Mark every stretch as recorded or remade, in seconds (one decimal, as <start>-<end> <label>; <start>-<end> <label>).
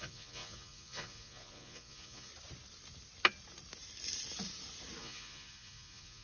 0.0-2.3 remade; 2.3-5.0 recorded; 5.0-6.2 remade